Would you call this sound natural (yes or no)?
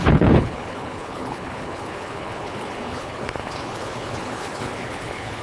no